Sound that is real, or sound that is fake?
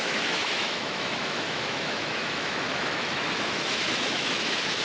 fake